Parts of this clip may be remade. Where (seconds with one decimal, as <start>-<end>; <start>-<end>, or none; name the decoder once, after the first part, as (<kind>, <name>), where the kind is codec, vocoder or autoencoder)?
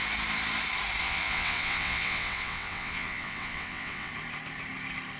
1.0-4.1 (vocoder, WaveNeXt)